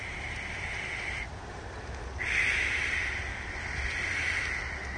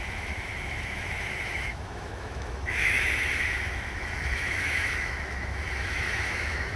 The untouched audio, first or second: first